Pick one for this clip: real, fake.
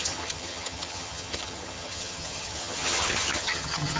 fake